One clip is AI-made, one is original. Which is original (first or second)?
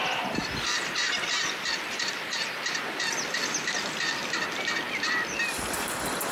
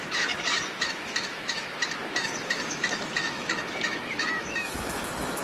first